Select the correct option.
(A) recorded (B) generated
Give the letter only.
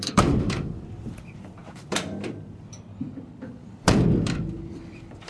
B